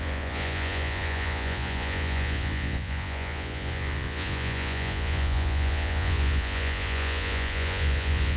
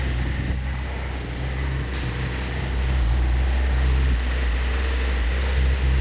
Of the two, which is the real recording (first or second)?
second